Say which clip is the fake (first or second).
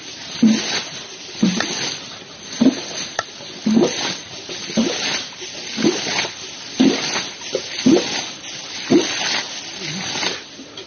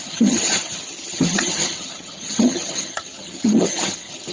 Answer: second